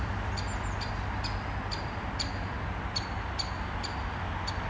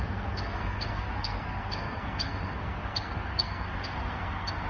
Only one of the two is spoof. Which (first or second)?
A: second